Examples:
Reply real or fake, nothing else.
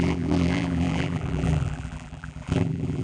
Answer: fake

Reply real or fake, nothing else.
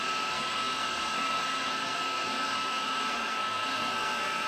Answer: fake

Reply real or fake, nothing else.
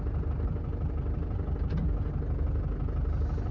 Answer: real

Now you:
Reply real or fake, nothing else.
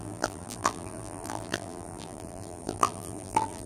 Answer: fake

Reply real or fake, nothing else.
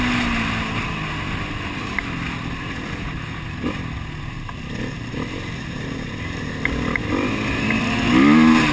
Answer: real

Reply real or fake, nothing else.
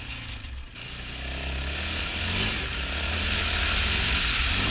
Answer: real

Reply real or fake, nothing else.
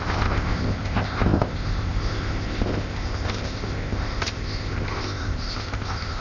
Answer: fake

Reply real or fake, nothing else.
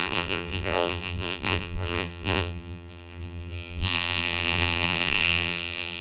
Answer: fake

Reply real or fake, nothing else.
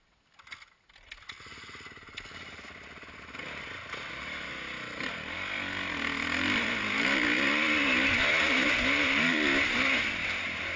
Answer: real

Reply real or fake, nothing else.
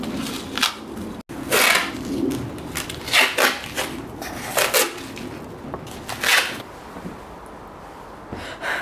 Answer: real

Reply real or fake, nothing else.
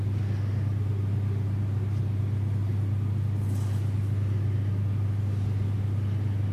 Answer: real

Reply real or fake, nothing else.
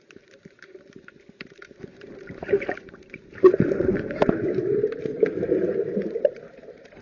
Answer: fake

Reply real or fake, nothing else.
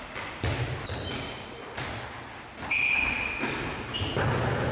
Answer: real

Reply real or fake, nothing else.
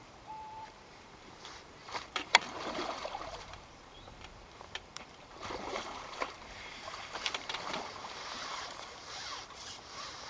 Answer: fake